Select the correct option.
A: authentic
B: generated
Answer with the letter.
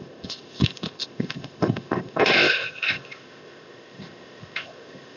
B